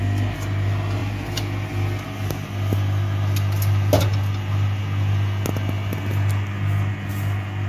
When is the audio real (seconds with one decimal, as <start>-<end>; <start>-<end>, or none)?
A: 0.0-7.7